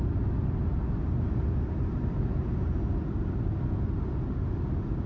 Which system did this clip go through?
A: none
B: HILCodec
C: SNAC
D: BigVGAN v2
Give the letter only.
A